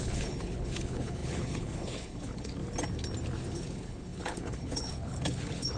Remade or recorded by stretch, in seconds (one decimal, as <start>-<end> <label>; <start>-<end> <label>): 0.0-2.6 remade; 2.6-3.5 recorded; 3.5-5.8 remade